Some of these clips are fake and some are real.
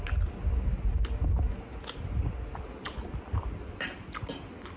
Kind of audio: real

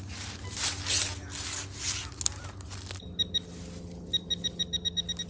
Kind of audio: real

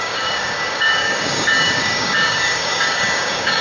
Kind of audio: fake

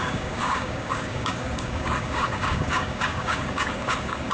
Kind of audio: fake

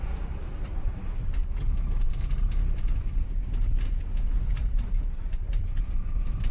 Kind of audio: real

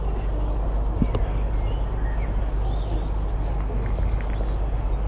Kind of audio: real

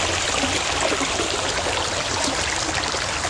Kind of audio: real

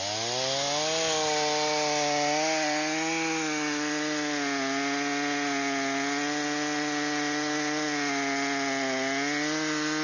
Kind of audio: real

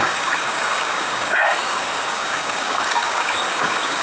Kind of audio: fake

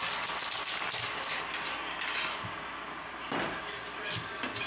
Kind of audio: real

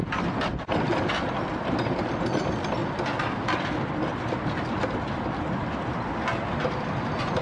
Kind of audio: real